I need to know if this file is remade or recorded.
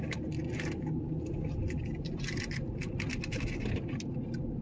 recorded